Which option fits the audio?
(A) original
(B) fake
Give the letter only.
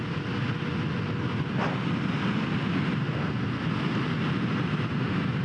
A